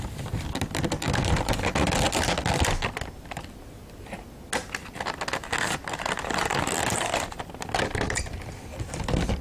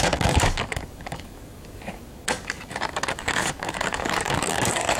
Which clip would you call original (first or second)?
first